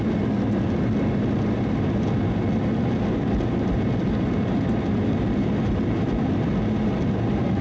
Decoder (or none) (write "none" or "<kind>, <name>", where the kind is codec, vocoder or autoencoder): none